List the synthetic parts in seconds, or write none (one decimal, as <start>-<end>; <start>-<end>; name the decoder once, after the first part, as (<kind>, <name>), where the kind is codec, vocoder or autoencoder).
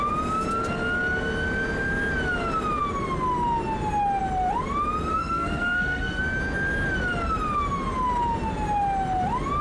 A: 5.1-6.2 (codec, SNAC)